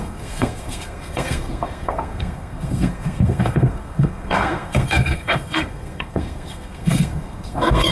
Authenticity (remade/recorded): remade